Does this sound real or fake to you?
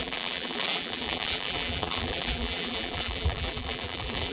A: fake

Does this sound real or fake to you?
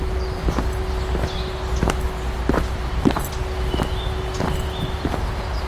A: real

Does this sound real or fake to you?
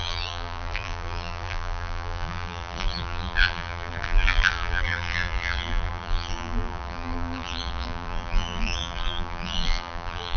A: fake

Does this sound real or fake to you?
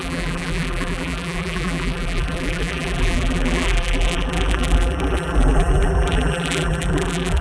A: fake